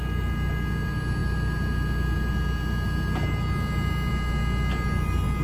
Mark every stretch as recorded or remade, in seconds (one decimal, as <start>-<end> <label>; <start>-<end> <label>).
0.0-5.4 recorded